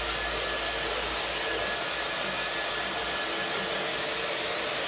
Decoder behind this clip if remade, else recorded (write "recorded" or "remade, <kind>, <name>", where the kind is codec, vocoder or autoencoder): recorded